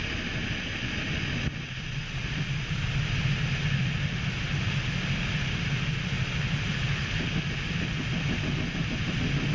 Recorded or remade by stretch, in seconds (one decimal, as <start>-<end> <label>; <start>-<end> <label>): 0.0-9.5 recorded